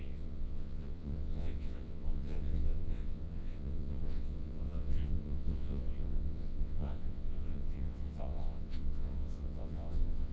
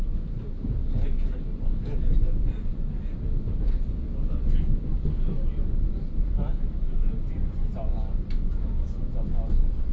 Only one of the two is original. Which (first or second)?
second